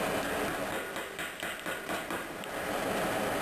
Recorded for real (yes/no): yes